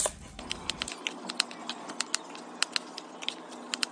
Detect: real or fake real